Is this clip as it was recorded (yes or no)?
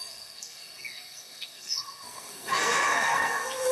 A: no